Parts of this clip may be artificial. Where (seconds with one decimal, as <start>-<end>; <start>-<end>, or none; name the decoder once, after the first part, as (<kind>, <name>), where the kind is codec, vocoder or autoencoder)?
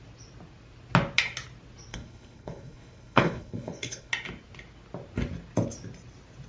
1.9-4.1 (codec, HILCodec)